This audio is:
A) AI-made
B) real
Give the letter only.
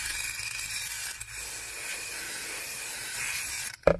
B